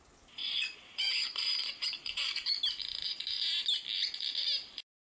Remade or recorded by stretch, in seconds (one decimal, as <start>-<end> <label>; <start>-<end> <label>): 0.0-0.4 recorded; 0.4-2.6 remade; 2.6-5.0 recorded